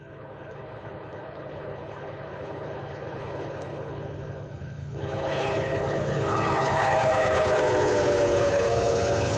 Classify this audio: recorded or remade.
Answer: remade